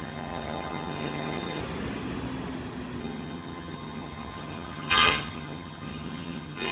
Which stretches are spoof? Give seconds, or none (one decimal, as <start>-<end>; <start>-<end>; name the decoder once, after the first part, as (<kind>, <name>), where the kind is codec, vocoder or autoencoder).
0.0-1.6 (vocoder, HiFi-GAN); 3.0-6.7